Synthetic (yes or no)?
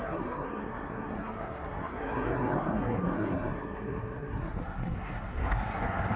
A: yes